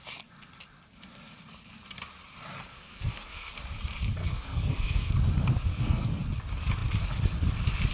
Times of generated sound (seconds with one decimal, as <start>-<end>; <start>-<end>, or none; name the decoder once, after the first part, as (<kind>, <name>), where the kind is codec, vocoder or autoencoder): 2.7-3.5 (codec, SNAC); 4.2-5.1; 5.7-6.2